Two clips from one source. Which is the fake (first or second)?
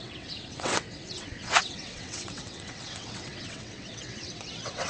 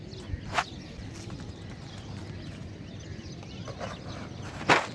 first